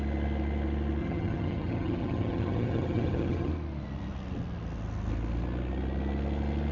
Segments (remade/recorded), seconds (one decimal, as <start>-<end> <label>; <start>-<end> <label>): 0.0-1.0 recorded; 1.0-3.5 remade; 3.5-6.7 recorded